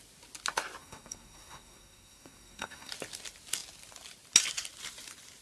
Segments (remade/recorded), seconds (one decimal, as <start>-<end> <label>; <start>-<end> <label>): 0.0-0.8 recorded; 0.8-2.9 remade; 2.9-5.4 recorded